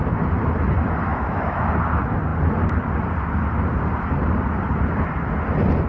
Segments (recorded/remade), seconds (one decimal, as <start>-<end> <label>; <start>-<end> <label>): 0.0-1.1 recorded; 1.1-1.7 remade; 1.7-5.9 recorded